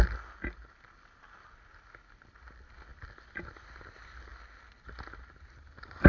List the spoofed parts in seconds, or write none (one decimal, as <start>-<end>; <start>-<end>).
none